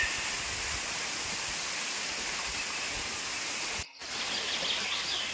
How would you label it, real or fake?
real